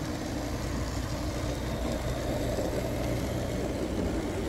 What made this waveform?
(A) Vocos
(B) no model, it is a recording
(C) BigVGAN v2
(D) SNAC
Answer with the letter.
B